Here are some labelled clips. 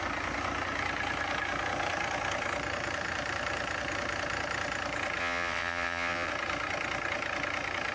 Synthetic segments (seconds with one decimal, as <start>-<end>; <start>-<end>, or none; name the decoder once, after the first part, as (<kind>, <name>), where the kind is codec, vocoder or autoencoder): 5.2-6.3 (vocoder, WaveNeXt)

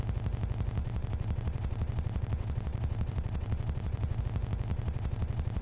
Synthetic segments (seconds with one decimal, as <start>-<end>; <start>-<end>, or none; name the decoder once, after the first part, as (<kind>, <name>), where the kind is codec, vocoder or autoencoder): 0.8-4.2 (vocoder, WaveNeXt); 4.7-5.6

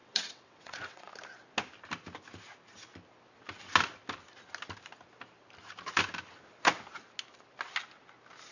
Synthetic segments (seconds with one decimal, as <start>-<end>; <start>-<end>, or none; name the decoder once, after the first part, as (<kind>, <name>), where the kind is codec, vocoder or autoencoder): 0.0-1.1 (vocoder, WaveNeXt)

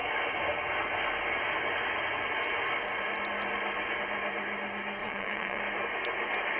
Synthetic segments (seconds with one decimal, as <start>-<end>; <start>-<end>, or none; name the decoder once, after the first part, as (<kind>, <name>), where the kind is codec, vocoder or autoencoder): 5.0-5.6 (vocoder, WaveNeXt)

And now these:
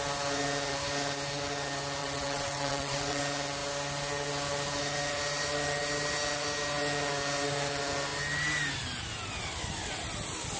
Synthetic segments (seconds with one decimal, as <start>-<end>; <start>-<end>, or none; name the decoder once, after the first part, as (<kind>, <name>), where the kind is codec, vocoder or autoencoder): 2.0-3.2 (vocoder, WaveNeXt)